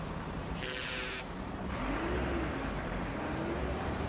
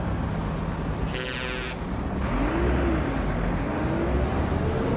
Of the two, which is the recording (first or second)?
second